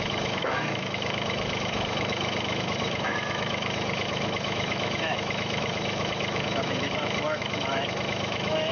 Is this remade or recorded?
remade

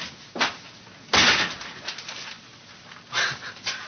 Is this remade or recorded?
recorded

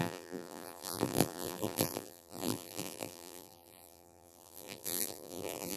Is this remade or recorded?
remade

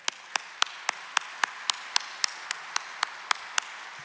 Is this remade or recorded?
recorded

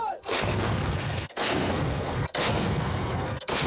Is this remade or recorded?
remade